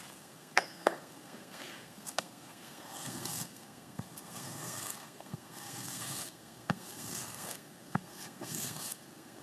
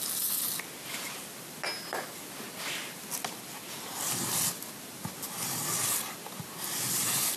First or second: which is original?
second